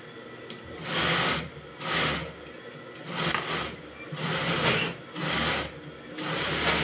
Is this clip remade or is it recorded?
recorded